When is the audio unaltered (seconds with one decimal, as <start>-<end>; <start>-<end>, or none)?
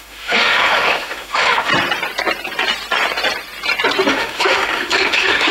1.7-4.1